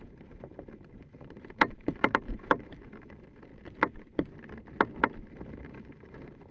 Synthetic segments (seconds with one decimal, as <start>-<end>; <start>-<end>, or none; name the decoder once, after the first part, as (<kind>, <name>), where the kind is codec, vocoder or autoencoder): 0.0-3.5 (vocoder, BigVGAN v2); 5.3-6.5